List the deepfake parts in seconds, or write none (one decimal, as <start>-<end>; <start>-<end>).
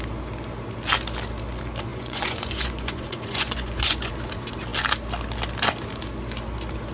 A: 1.9-4.1